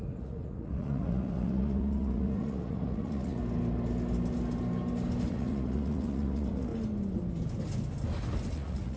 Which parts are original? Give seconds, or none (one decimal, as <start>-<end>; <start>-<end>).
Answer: 3.4-5.3; 6.7-8.5